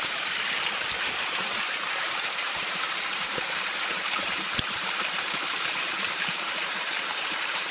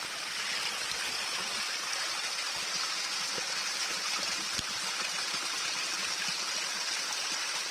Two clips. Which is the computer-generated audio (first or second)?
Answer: first